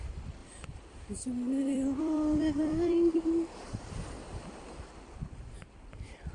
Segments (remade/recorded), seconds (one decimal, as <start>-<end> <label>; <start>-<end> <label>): 0.0-0.4 recorded; 0.4-1.1 remade; 1.1-1.6 recorded; 1.6-4.4 remade; 4.4-6.3 recorded